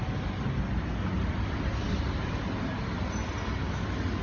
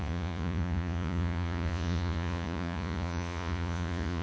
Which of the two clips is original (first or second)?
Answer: first